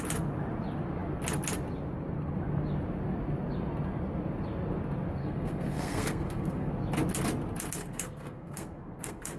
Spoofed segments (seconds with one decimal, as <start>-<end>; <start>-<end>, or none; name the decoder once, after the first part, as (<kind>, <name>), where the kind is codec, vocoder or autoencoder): 5.2-6.7 (codec, SNAC); 7.8-9.4